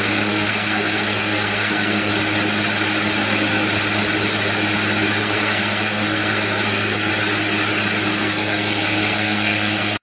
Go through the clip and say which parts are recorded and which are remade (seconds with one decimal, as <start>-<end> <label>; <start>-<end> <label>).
0.0-2.1 remade; 2.1-5.2 recorded; 5.2-7.1 remade; 7.1-8.1 recorded; 8.1-10.0 remade